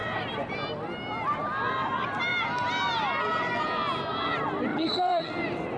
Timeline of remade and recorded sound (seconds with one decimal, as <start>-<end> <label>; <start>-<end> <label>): 0.0-4.7 recorded; 4.7-5.3 remade; 5.3-5.8 recorded